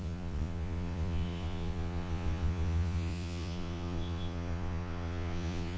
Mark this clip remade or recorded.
remade